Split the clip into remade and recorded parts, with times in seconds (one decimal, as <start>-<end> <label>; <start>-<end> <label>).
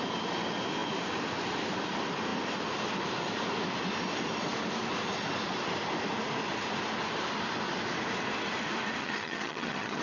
0.0-9.0 recorded; 9.0-10.0 remade